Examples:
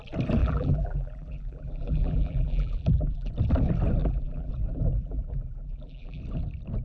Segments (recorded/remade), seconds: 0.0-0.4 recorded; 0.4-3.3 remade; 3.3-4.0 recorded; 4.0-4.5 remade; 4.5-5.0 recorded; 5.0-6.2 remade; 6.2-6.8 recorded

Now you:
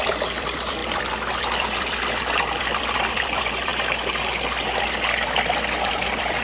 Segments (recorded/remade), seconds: 0.0-0.8 remade; 0.8-1.4 recorded; 1.4-3.7 remade; 3.7-5.9 recorded; 5.9-6.4 remade

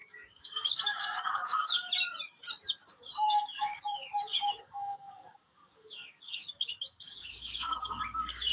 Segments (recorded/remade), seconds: 0.0-1.9 remade; 1.9-2.9 recorded; 2.9-8.5 remade

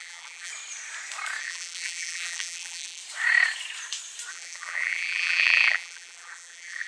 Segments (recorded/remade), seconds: 0.0-0.5 remade; 0.5-1.4 recorded; 1.4-3.0 remade; 3.0-4.3 recorded; 4.3-6.9 remade

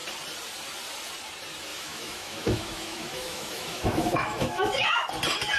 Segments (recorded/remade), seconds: 0.0-1.7 recorded; 1.7-5.1 remade; 5.1-5.6 recorded

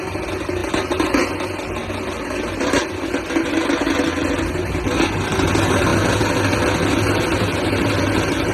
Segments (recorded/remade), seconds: 0.0-8.5 recorded

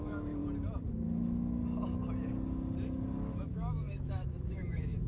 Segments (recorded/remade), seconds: 0.0-0.4 remade; 0.4-0.9 recorded; 0.9-1.6 remade; 1.6-3.3 recorded; 3.3-5.1 remade

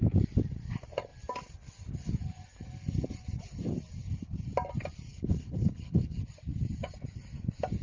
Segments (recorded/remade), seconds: 0.0-5.1 recorded; 5.1-6.2 remade; 6.2-7.8 recorded